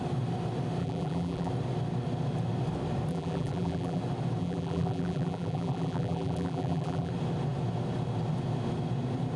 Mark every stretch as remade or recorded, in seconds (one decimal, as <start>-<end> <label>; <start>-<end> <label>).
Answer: 0.0-0.8 recorded; 0.8-1.5 remade; 1.5-3.1 recorded; 3.1-4.0 remade; 4.0-4.4 recorded; 4.4-7.1 remade; 7.1-9.4 recorded